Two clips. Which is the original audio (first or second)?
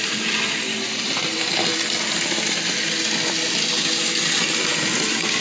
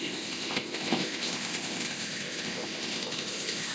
first